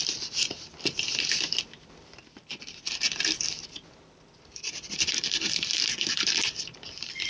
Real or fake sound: fake